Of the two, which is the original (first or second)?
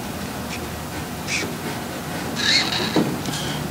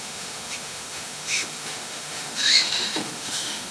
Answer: first